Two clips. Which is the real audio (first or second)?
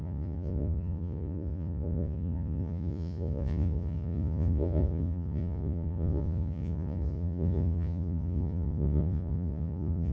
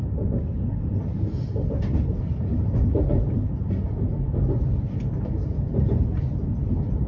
second